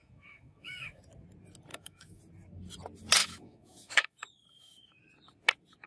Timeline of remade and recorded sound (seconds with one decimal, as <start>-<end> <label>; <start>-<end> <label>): 0.0-1.0 remade; 1.0-1.7 recorded; 1.7-2.2 remade; 2.2-3.2 recorded; 3.2-5.0 remade; 5.0-5.9 recorded